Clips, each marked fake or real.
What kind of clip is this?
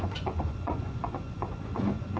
fake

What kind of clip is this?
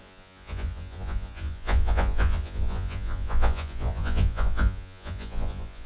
fake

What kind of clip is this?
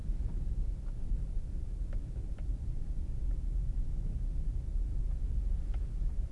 real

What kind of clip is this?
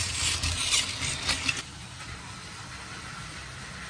real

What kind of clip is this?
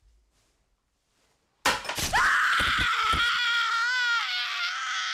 real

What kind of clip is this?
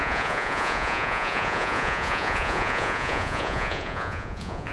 fake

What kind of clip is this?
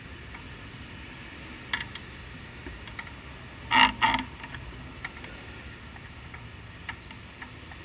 real